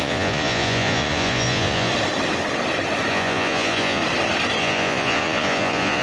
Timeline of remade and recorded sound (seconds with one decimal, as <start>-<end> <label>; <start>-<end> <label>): 0.0-1.9 remade; 1.9-3.1 recorded; 3.1-4.0 remade; 4.0-4.6 recorded; 4.6-6.0 remade